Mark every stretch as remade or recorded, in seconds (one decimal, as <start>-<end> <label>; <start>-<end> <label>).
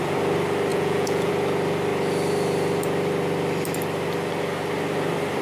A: 0.0-0.7 recorded; 0.7-1.3 remade; 1.3-5.4 recorded